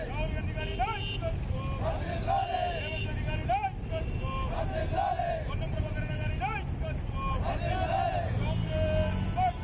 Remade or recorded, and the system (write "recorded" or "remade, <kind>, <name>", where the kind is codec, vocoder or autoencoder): recorded